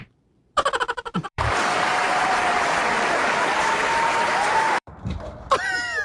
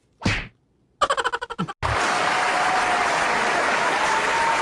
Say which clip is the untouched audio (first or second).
second